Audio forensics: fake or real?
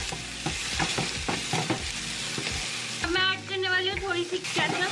real